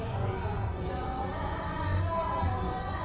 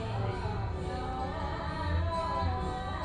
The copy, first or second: first